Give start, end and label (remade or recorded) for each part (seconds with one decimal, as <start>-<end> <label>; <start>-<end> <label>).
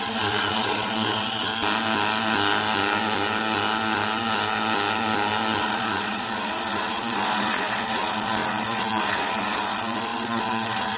0.0-1.5 remade; 1.5-5.6 recorded; 5.6-11.0 remade